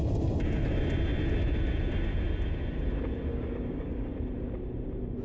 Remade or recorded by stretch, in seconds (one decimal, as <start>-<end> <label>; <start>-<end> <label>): 0.0-3.3 recorded; 3.3-4.1 remade; 4.1-5.2 recorded